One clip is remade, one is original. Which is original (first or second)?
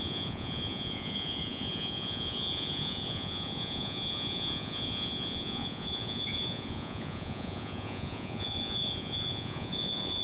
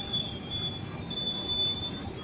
second